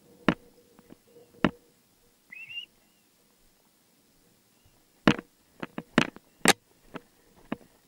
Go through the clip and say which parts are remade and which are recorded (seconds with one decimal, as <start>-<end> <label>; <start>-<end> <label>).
0.0-7.9 recorded